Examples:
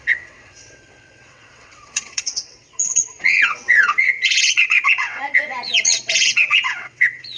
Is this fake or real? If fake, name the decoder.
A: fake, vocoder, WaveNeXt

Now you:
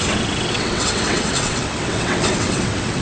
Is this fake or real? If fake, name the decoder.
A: fake, vocoder, WaveNeXt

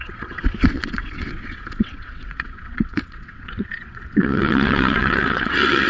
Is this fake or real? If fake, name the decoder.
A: fake, vocoder, WaveNeXt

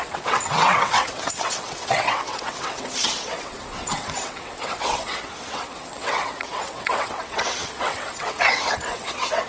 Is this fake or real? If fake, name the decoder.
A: fake, vocoder, WaveNeXt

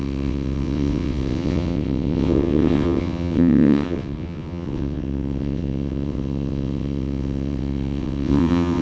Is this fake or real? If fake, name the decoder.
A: fake, vocoder, WaveNeXt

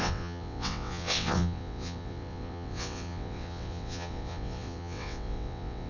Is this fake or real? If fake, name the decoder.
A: fake, vocoder, WaveNeXt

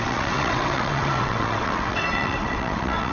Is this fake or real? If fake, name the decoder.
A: fake, vocoder, WaveNeXt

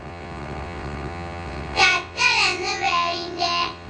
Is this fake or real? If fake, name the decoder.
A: fake, vocoder, WaveNeXt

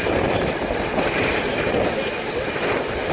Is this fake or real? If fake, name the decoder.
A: real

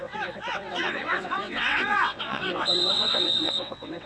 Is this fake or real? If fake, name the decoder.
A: fake, vocoder, WaveNeXt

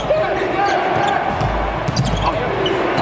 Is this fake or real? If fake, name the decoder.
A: real